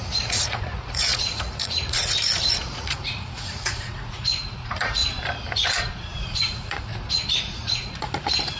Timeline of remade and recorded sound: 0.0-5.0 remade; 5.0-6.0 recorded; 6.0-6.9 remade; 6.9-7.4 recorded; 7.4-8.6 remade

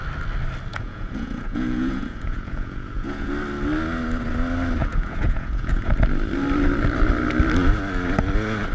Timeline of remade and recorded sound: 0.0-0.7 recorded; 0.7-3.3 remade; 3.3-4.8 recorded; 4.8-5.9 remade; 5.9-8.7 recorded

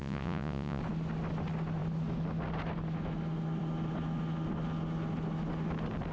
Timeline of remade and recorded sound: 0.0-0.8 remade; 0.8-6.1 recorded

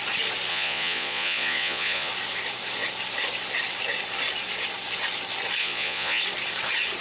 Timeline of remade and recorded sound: 0.0-0.5 recorded; 0.5-2.1 remade; 2.1-5.6 recorded; 5.6-6.2 remade; 6.2-7.0 recorded

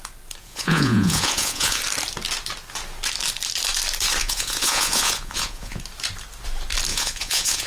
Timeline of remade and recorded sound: 0.0-0.4 recorded; 0.4-1.8 remade; 1.8-4.2 recorded; 4.2-5.8 remade; 5.8-6.9 recorded; 6.9-7.7 remade